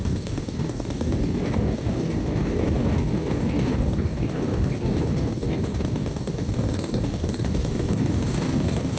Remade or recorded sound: remade